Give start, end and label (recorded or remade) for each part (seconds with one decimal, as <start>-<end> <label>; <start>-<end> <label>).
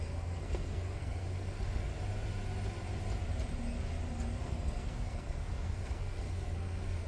0.0-1.9 remade; 1.9-4.4 recorded; 4.4-7.1 remade